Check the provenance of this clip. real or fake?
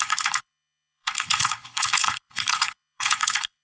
fake